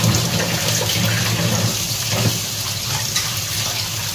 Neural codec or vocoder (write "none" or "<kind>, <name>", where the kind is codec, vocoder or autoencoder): none